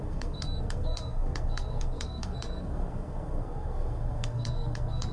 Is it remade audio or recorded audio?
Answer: remade